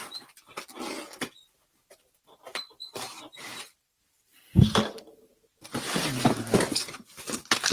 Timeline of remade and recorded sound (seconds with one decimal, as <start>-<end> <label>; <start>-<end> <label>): 0.0-2.5 recorded; 2.5-3.0 remade; 3.0-3.5 recorded; 3.5-6.4 remade; 6.4-7.7 recorded

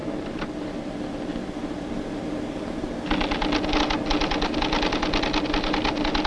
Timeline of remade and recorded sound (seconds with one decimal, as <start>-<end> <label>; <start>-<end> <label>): 0.0-6.3 recorded

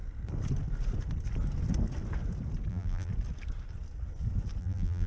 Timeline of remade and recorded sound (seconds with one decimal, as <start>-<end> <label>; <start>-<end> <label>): 0.0-2.7 recorded; 2.7-3.1 remade; 3.1-4.6 recorded; 4.6-5.1 remade